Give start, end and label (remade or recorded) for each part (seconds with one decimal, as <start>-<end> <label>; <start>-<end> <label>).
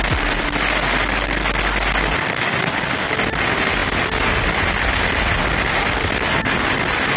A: 0.0-7.2 recorded